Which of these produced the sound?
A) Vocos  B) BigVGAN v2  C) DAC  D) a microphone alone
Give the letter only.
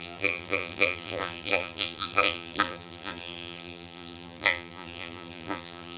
B